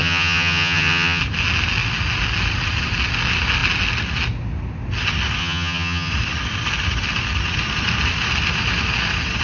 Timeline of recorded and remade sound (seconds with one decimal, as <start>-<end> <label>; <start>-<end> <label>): 0.0-1.2 remade; 1.2-5.4 recorded; 5.4-6.1 remade; 6.1-9.4 recorded

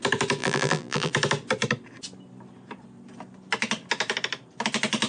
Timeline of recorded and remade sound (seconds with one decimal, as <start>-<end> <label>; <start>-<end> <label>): 0.0-0.4 recorded; 0.4-1.1 remade; 1.1-5.1 recorded

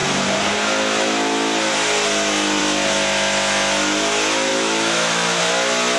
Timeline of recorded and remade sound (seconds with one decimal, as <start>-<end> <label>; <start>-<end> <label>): 0.0-4.5 recorded; 4.5-5.4 remade; 5.4-6.0 recorded

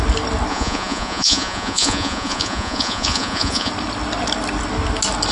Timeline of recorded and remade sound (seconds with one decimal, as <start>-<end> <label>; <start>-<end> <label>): 0.0-0.5 recorded; 0.5-3.7 remade; 3.7-5.3 recorded

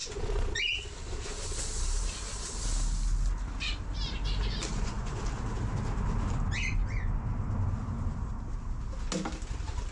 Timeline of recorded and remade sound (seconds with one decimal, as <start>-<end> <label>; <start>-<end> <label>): 0.0-0.5 remade; 0.5-4.7 recorded; 4.7-5.2 remade; 5.2-9.9 recorded